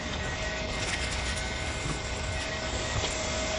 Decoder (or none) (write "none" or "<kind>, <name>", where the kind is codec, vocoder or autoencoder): codec, DAC